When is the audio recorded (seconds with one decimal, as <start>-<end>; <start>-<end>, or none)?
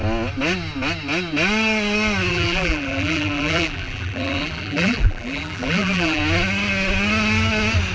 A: 0.0-2.3; 6.2-7.9